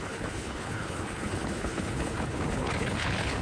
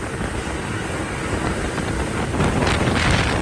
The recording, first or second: second